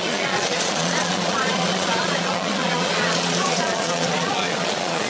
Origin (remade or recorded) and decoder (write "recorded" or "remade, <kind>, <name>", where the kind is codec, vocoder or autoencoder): remade, vocoder, Vocos